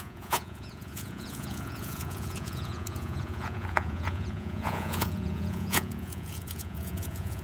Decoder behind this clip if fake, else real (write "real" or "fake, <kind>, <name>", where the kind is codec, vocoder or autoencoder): fake, vocoder, Vocos